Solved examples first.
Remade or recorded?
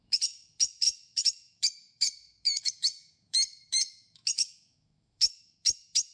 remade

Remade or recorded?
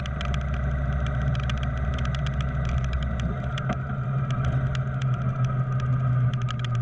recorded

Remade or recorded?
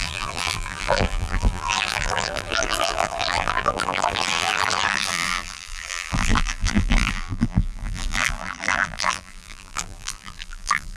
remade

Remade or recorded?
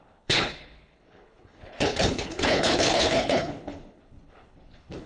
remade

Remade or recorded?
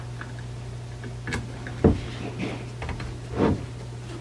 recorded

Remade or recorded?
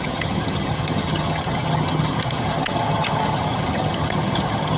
remade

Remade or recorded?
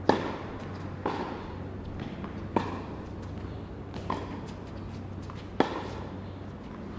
recorded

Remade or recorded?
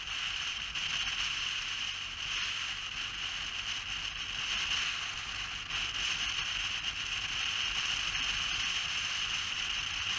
recorded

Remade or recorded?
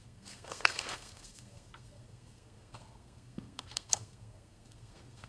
remade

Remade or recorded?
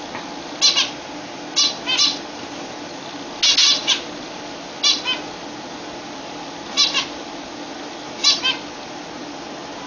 recorded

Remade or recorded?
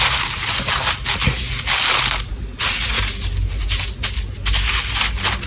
recorded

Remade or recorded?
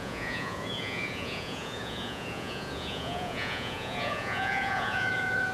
remade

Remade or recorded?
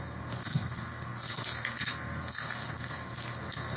remade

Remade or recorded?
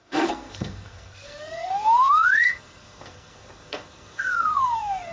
remade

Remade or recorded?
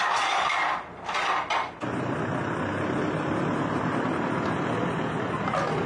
recorded